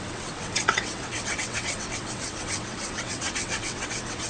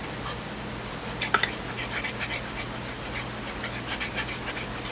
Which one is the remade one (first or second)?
first